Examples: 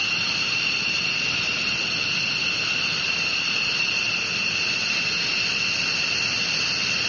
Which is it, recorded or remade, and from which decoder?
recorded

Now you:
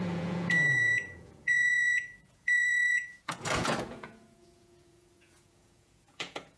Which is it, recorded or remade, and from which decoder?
remade, vocoder, Vocos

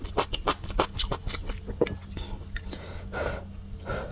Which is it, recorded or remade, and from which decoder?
recorded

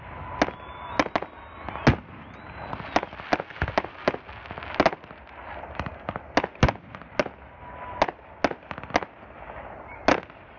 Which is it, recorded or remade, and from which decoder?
recorded